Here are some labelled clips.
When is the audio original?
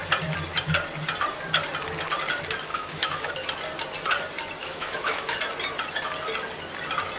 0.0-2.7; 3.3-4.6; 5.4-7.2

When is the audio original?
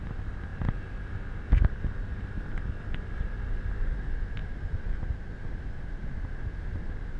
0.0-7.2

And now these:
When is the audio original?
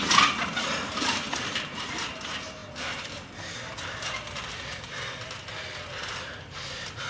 0.0-7.1